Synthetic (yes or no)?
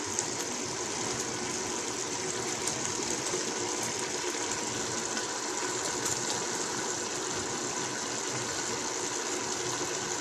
no